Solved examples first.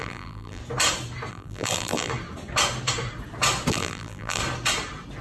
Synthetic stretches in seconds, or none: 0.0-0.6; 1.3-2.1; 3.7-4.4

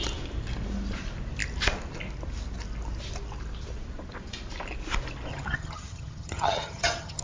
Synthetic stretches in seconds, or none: 5.3-7.2